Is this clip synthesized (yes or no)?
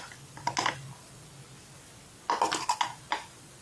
no